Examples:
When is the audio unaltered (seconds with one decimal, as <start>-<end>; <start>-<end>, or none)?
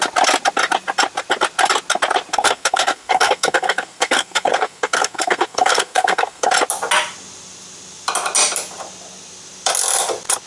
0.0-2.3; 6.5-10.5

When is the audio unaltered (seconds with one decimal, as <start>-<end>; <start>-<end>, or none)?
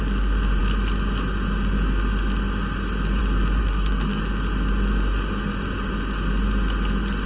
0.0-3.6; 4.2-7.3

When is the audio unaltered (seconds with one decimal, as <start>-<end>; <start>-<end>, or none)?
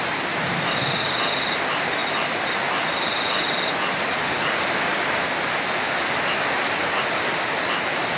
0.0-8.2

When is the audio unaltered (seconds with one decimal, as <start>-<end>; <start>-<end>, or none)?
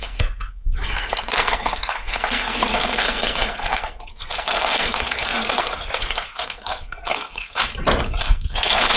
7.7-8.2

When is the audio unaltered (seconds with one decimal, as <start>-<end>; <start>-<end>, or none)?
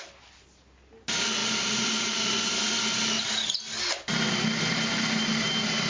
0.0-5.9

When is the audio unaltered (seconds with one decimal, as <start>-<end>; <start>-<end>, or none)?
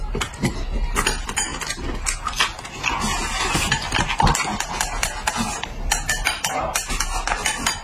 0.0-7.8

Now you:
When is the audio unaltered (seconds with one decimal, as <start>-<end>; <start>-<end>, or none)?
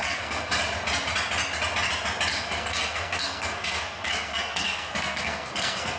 0.5-2.3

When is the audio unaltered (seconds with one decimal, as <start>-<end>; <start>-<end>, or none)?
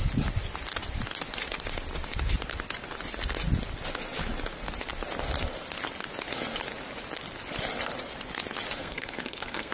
0.0-8.8